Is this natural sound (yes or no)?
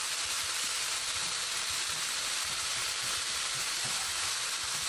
no